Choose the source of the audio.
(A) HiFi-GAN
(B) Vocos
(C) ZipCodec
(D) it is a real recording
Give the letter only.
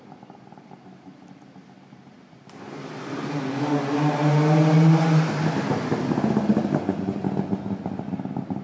D